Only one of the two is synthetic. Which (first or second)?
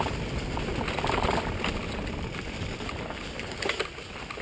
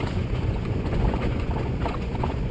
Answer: second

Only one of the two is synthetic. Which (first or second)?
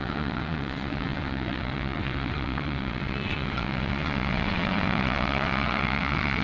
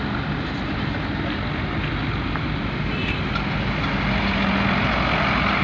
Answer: first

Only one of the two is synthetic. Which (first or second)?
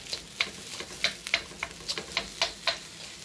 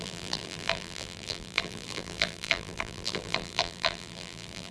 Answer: second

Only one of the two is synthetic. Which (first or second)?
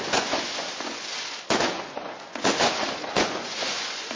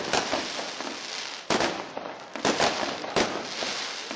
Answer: first